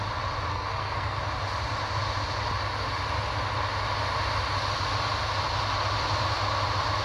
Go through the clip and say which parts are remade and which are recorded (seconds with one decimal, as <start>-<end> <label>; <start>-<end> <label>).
0.0-0.5 recorded; 0.5-1.2 remade; 1.2-7.0 recorded